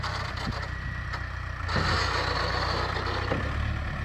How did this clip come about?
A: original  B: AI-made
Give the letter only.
A